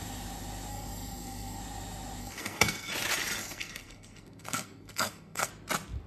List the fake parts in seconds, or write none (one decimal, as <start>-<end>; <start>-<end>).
0.7-1.6; 2.2-2.9; 3.4-5.5